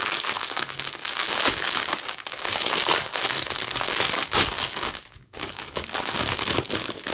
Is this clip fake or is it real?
fake